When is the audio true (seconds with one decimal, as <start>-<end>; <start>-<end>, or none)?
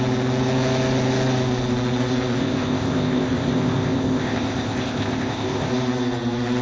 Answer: 0.0-2.4; 5.7-6.6